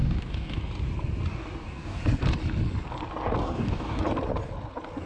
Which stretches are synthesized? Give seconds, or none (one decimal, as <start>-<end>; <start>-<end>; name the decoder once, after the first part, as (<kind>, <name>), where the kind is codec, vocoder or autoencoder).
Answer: 0.0-0.6 (codec, DAC); 1.3-2.0; 3.4-4.0